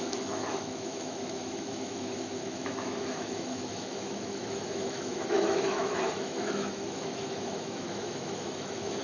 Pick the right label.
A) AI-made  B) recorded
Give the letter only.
A